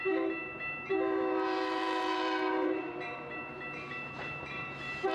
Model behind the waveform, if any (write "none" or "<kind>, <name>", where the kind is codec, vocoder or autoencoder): vocoder, BigVGAN v2